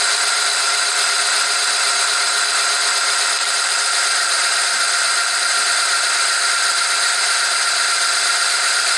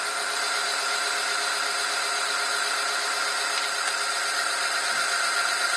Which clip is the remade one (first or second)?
first